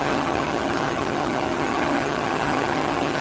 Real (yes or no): no